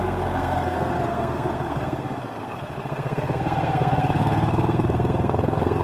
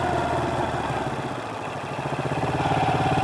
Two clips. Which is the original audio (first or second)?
second